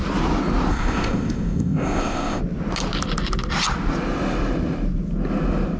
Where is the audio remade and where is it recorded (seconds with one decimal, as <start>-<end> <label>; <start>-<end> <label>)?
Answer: 0.0-0.7 recorded; 0.7-2.4 remade; 2.4-5.8 recorded